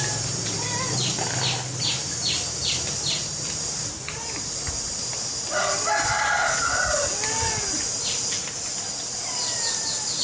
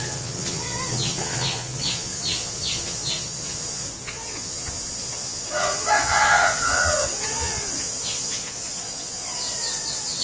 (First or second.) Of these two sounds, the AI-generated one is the second